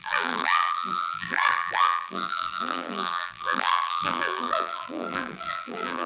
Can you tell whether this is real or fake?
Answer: fake